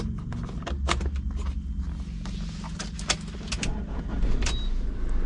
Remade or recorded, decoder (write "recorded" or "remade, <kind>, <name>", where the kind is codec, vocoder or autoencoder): recorded